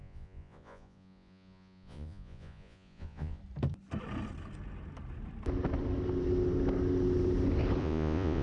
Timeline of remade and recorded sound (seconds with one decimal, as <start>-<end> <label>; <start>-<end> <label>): 0.0-3.4 remade; 3.4-7.8 recorded; 7.8-8.4 remade